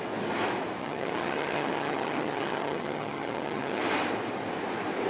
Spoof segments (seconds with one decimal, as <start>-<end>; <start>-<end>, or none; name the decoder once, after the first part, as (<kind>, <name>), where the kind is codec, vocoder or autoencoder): 0.8-3.8 (vocoder, HiFi-GAN)